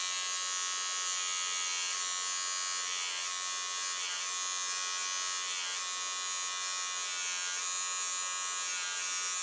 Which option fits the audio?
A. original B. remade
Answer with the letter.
A